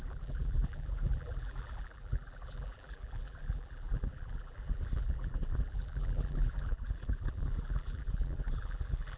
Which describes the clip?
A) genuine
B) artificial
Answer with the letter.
B